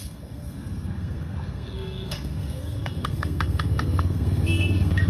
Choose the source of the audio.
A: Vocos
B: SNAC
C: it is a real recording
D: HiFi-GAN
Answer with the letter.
B